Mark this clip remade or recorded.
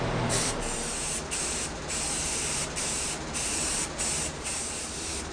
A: remade